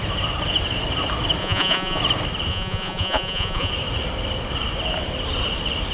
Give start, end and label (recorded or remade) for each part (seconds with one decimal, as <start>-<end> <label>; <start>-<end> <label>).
0.0-1.4 recorded; 1.4-2.0 remade; 2.0-2.5 recorded; 2.5-3.7 remade; 3.7-5.9 recorded